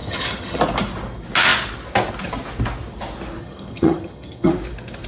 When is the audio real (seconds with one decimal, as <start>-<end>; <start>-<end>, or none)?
0.6-3.4; 4.5-5.1